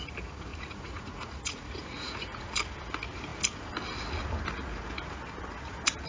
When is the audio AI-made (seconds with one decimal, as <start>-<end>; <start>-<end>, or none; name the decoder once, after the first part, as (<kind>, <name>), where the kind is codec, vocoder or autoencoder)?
0.5-2.5 (vocoder, Vocos)